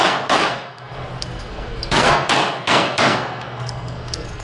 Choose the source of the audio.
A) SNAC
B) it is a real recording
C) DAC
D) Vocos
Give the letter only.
A